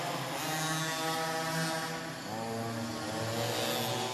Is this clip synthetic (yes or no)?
no